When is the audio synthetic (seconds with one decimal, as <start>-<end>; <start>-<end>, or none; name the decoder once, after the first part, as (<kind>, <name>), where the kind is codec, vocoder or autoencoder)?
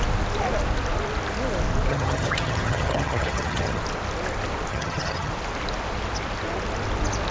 1.9-3.8 (vocoder, HiFi-GAN); 4.7-5.3